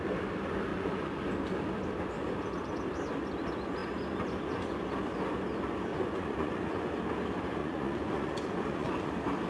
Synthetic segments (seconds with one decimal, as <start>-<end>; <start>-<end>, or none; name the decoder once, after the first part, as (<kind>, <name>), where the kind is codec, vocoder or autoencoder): 0.7-1.2 (vocoder, Vocos); 5.9-6.9; 7.6-9.1